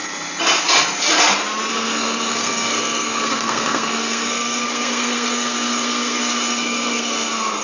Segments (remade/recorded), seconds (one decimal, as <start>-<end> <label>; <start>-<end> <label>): 0.0-1.7 recorded; 1.7-7.6 remade

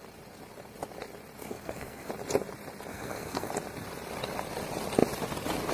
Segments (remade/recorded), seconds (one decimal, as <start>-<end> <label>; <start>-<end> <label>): 0.0-1.4 recorded; 1.4-2.1 remade; 2.1-2.9 recorded; 2.9-3.5 remade; 3.5-5.7 recorded

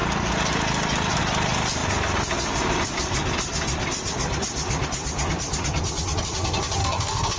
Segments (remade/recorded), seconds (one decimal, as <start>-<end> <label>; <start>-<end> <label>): 0.0-6.8 recorded; 6.8-7.4 remade

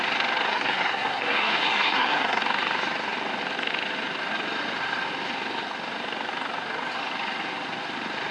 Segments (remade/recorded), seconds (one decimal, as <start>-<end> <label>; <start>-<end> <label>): 0.0-0.5 recorded; 0.5-2.4 remade; 2.4-8.3 recorded

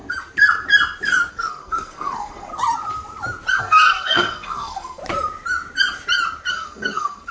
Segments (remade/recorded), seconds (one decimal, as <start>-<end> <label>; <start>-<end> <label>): 0.0-1.3 recorded; 1.3-2.5 remade; 2.5-3.6 recorded; 3.6-5.0 remade; 5.0-6.5 recorded; 6.5-7.3 remade

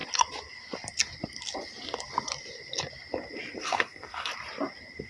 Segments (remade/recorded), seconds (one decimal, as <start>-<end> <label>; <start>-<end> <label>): 0.0-3.6 recorded; 3.6-4.3 remade; 4.3-5.1 recorded

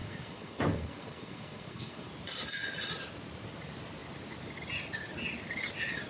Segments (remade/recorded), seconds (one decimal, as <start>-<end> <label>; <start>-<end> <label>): 0.0-2.1 remade; 2.1-6.1 recorded